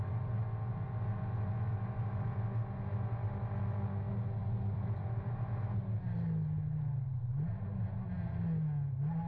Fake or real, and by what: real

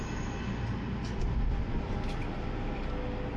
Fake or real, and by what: real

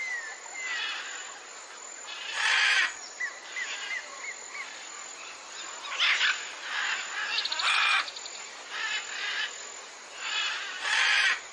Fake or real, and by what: real